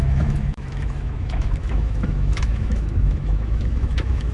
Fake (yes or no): yes